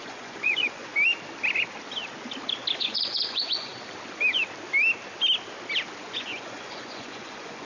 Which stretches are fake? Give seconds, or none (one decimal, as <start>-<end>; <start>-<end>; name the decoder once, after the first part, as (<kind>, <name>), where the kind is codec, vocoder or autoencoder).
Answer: 0.0-0.9 (vocoder, Vocos); 2.8-3.7; 6.0-7.7